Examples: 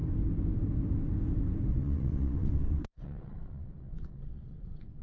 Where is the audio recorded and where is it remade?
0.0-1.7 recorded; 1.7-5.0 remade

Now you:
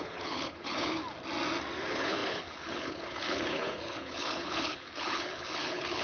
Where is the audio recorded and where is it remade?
0.0-1.0 remade; 1.0-1.8 recorded; 1.8-6.0 remade

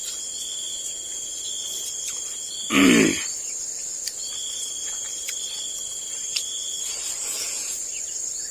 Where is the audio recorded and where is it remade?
0.0-7.2 recorded; 7.2-7.9 remade; 7.9-8.5 recorded